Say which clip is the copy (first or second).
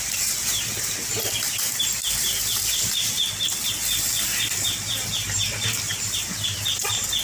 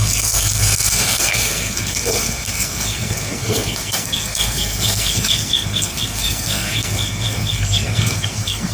second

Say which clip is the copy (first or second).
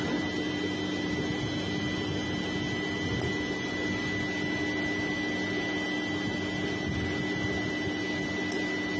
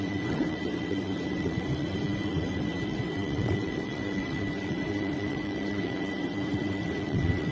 second